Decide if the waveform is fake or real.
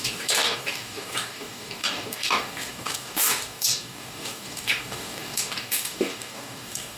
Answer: fake